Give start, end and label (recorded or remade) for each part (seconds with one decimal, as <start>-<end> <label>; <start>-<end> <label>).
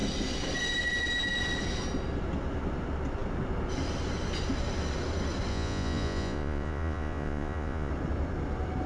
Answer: 0.0-5.5 recorded; 5.5-7.9 remade; 7.9-8.9 recorded